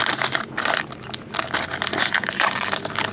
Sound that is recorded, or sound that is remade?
recorded